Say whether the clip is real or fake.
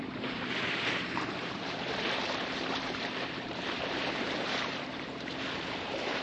fake